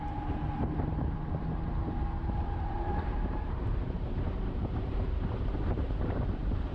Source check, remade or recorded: remade